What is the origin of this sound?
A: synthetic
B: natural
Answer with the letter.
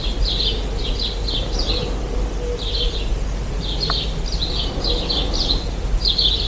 B